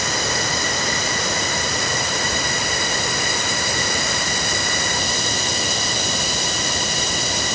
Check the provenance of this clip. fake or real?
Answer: real